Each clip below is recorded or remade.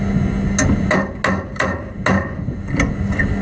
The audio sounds recorded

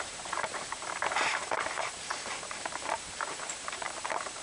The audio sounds remade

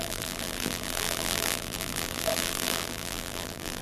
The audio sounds remade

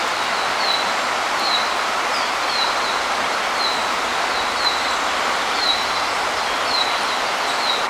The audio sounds recorded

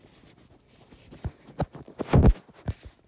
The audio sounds recorded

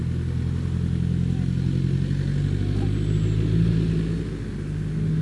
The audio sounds recorded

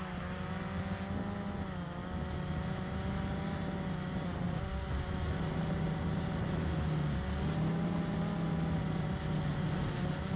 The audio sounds recorded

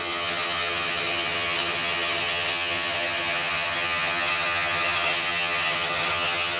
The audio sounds remade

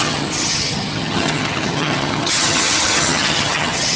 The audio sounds remade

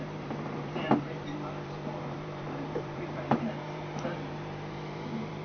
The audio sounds remade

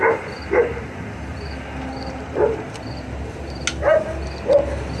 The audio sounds recorded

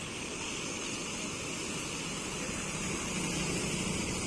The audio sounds recorded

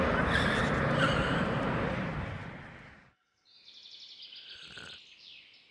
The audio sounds recorded